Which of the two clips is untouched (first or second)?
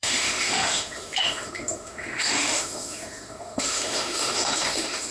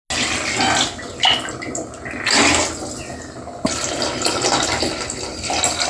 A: second